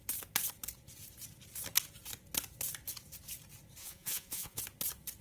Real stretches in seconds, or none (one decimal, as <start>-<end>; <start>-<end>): 0.0-3.8; 4.6-5.2